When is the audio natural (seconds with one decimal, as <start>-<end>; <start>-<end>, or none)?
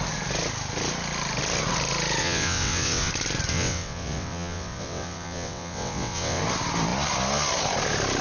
0.0-2.2; 3.1-3.5; 6.4-8.2